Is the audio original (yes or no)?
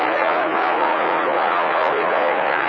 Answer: no